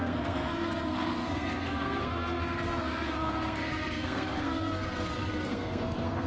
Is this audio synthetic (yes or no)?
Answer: yes